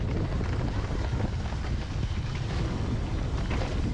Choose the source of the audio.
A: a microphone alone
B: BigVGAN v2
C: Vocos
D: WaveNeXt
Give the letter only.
A